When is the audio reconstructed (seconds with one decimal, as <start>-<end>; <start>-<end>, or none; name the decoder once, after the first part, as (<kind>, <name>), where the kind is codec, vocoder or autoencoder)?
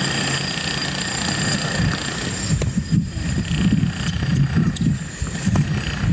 none